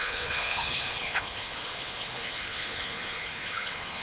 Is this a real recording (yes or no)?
no